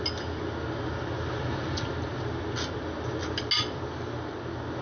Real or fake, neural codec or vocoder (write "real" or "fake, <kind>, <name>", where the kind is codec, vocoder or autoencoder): real